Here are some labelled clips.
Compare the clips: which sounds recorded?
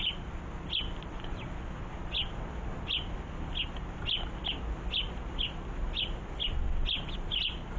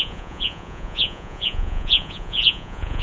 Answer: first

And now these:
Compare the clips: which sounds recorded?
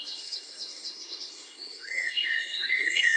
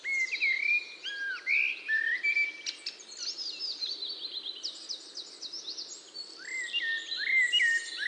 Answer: second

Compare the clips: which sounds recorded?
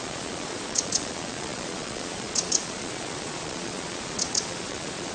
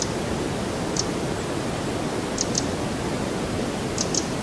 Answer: second